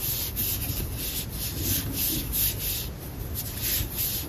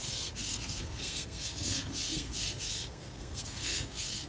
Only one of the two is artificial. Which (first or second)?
second